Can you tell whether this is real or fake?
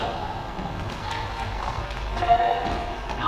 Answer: fake